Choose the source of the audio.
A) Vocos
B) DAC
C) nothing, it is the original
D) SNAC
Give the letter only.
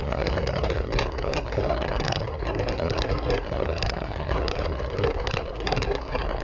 D